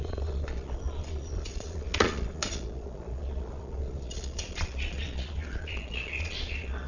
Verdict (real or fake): fake